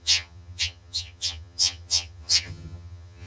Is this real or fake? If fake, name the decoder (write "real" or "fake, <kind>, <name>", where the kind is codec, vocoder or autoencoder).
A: fake, vocoder, HiFi-GAN